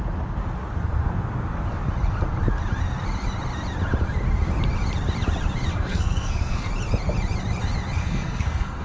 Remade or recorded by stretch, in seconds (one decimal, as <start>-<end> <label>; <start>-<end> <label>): 0.0-5.9 recorded; 5.9-6.7 remade; 6.7-8.0 recorded; 8.0-8.8 remade